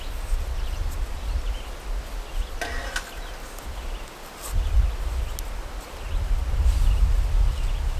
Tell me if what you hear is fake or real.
real